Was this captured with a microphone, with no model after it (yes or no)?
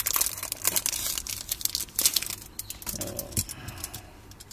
yes